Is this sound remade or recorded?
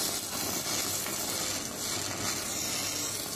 recorded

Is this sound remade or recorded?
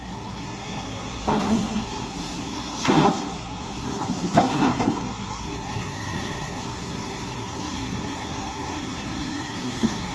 remade